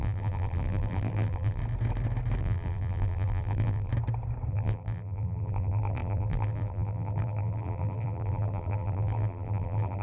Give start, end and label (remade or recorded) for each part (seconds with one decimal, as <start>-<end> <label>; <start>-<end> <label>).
0.0-1.6 remade; 1.6-2.4 recorded; 2.4-3.9 remade; 3.9-4.5 recorded; 4.5-10.0 remade